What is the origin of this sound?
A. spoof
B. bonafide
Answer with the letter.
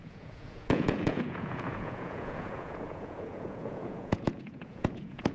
A